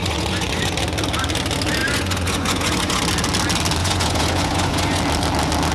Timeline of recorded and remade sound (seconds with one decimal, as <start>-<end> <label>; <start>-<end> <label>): 0.0-0.7 remade; 0.7-1.8 recorded; 1.8-3.0 remade; 3.0-3.8 recorded; 3.8-5.0 remade; 5.0-5.7 recorded